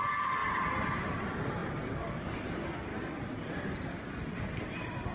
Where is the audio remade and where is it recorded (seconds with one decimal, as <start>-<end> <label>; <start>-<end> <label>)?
0.0-0.4 recorded; 0.4-1.0 remade; 1.0-1.6 recorded; 1.6-2.5 remade; 2.5-5.1 recorded